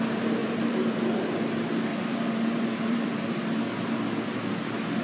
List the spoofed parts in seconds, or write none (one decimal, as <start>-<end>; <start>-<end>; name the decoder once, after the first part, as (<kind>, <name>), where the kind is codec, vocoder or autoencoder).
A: 0.4-1.2 (vocoder, BigVGAN v2); 1.9-3.5